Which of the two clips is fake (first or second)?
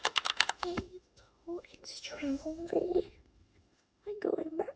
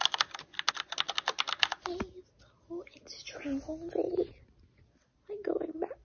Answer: first